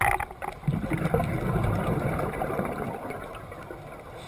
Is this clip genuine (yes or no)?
yes